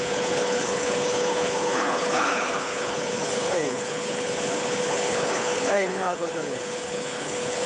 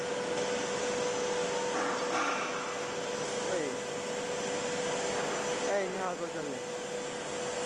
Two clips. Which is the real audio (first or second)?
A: second